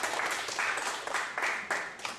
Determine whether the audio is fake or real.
real